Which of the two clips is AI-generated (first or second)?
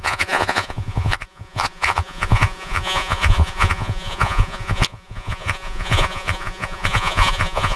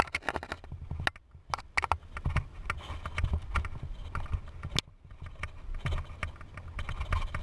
first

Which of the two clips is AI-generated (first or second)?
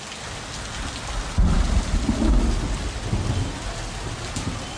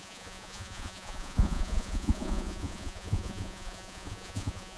second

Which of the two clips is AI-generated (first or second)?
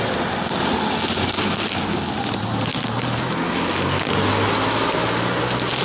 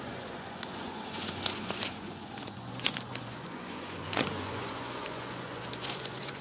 second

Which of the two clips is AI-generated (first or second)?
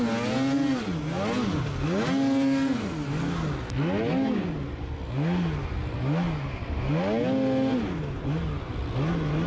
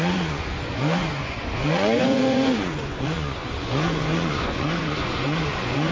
second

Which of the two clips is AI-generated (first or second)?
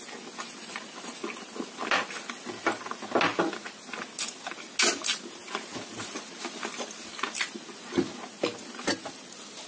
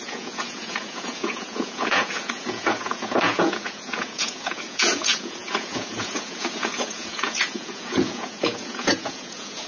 second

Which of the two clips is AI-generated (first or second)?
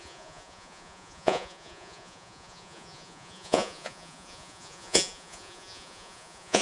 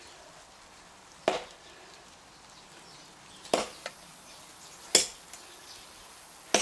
first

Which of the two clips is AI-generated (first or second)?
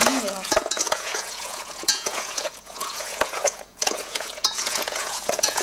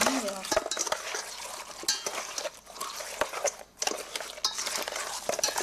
first